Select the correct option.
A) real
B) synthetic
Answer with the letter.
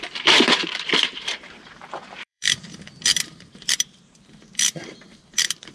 B